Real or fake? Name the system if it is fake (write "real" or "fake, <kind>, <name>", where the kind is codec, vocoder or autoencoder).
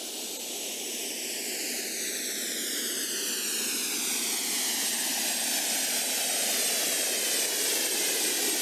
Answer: real